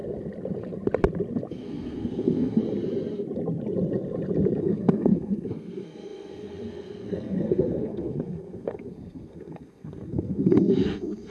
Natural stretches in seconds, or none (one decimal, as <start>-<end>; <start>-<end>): 0.0-1.5; 2.6-4.6